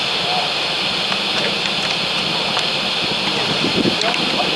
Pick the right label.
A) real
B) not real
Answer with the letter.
A